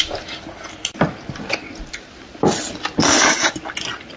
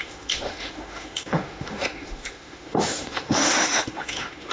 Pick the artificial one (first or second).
second